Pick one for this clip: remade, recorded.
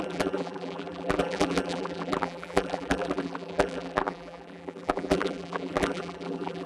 remade